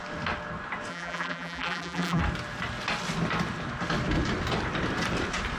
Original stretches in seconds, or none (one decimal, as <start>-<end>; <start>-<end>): 0.0-0.9; 2.2-5.6